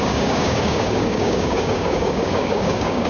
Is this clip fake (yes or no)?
yes